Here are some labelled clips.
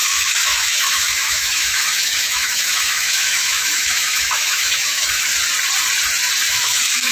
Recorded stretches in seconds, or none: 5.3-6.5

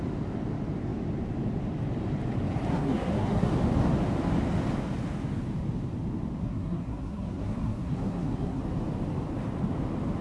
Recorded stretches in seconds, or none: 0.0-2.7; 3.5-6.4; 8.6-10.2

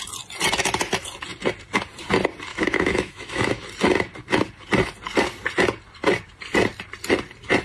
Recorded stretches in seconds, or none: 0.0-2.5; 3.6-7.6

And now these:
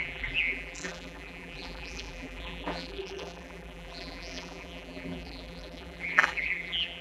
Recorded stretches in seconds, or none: none

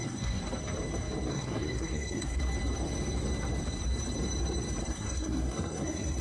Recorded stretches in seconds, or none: 0.4-1.3; 2.4-4.8

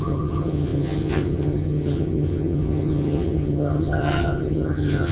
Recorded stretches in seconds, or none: none

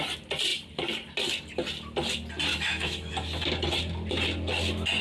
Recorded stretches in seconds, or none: 0.0-2.5; 3.1-5.0

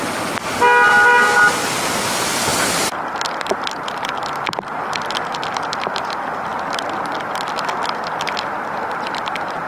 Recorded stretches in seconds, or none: 0.0-9.7